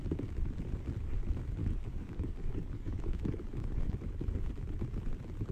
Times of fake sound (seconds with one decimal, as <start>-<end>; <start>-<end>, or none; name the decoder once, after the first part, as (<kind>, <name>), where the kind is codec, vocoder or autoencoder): 1.6-4.0 (codec, DAC)